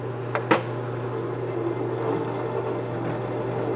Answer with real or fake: real